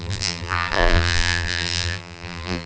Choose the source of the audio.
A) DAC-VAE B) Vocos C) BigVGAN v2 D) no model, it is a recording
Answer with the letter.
C